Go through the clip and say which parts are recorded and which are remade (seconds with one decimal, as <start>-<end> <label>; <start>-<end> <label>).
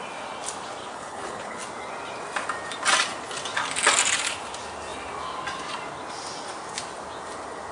0.0-0.8 recorded; 0.8-1.6 remade; 1.6-7.7 recorded